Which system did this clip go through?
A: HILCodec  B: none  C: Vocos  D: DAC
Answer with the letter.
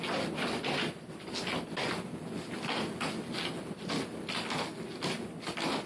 B